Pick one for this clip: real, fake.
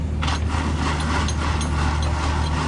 real